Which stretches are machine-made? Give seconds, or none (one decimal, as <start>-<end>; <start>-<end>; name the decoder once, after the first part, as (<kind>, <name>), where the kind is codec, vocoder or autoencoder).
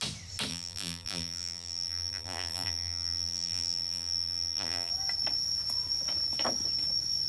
0.5-4.9 (vocoder, BigVGAN v2)